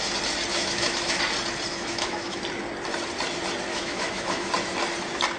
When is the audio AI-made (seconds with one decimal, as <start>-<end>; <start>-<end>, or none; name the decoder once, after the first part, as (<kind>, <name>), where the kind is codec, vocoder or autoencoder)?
0.5-1.2 (autoencoder, DAC-VAE); 1.7-2.4; 3.7-4.5